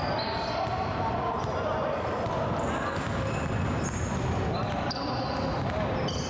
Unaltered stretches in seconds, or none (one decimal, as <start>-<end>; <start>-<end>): 0.0-6.3